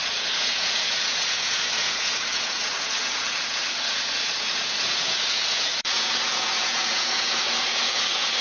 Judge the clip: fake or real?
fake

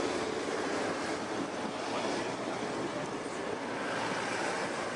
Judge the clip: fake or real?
real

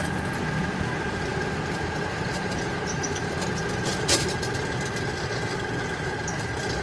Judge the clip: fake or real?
real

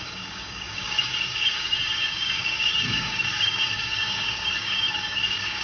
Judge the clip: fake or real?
fake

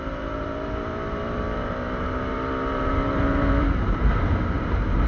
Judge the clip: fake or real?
fake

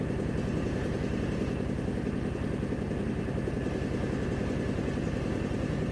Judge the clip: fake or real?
real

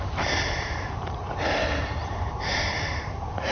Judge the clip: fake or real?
fake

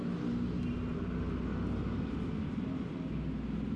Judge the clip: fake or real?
real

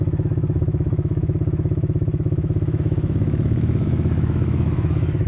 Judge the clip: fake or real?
fake